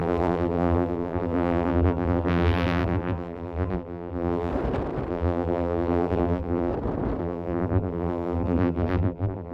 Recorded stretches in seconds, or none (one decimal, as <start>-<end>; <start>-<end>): 4.5-5.1; 6.7-7.2